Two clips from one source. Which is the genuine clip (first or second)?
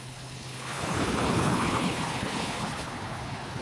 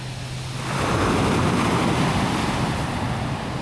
second